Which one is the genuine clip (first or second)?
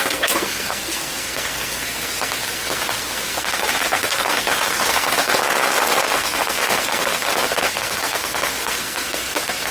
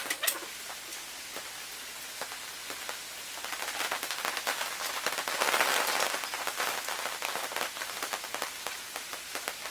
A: second